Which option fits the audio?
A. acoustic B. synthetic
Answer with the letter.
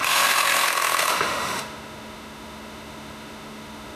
B